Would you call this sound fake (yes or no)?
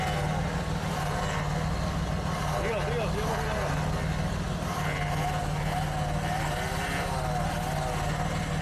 no